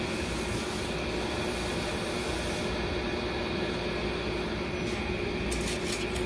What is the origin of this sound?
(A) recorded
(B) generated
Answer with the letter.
A